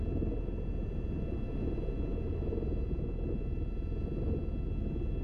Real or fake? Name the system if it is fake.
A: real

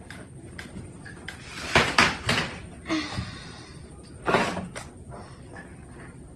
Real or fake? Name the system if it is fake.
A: real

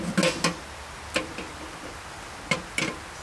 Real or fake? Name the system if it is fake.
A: real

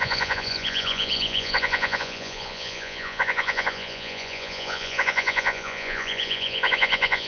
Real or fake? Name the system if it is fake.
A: fake, vocoder, Vocos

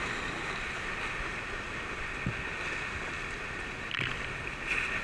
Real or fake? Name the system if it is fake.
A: real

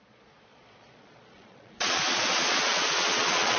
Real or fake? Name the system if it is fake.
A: fake, vocoder, Vocos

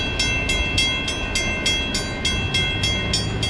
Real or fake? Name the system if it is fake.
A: real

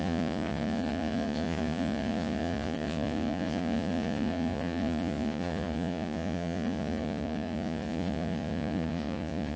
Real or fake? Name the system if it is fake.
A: fake, vocoder, Vocos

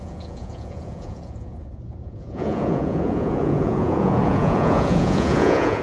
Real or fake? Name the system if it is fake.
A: fake, vocoder, Vocos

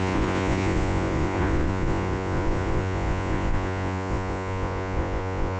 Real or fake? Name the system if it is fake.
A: fake, vocoder, Vocos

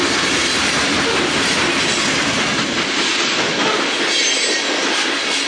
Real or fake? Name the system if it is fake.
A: real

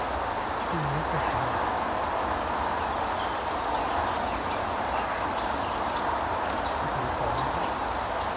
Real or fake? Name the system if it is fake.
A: real